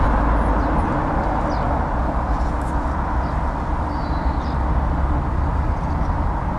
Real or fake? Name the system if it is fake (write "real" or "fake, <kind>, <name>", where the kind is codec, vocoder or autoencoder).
real